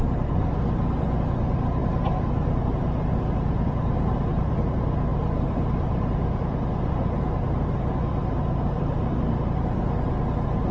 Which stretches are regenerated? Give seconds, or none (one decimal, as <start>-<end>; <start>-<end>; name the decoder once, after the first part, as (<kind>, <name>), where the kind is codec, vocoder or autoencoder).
1.8-4.6 (vocoder, BigVGAN v2); 5.1-9.8

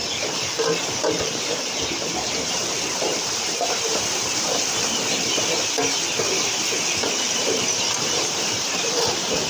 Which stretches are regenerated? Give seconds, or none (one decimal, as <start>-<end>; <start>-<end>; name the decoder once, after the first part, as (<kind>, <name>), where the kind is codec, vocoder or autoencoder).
1.5-3.9 (vocoder, BigVGAN v2); 7.3-9.5